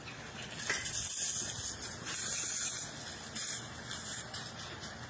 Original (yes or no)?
yes